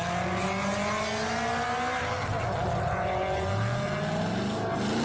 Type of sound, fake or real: real